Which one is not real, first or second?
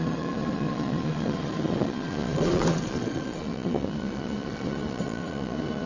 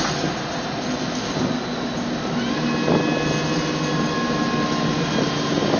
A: first